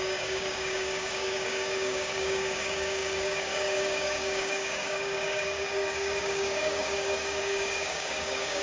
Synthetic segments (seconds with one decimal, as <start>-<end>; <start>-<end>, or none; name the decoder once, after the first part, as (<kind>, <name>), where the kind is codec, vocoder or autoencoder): 0.0-8.6 (codec, DAC)